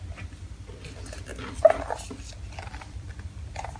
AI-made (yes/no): yes